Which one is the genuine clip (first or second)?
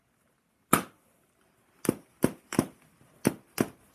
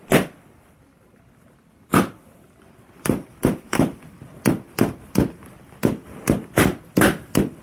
first